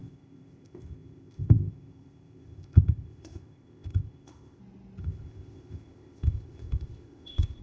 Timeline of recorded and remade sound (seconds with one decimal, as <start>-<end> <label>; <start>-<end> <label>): 0.0-4.6 remade; 4.6-5.0 recorded; 5.0-7.6 remade